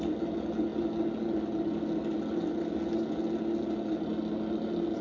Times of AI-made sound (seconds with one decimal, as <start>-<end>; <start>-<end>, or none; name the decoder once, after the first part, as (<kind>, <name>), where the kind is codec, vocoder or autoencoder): none